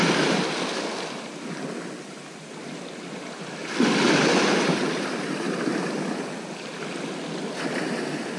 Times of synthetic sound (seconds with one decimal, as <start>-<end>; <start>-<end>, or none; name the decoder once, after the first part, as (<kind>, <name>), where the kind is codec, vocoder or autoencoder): none